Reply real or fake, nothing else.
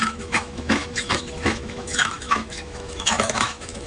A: fake